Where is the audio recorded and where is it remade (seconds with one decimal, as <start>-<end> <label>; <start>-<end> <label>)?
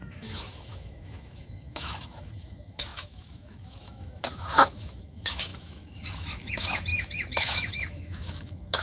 0.0-8.8 remade